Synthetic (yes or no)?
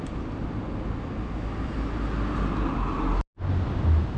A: no